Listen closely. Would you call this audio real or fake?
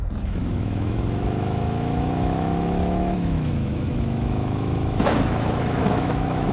fake